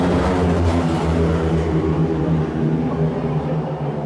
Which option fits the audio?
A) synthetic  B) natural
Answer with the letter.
A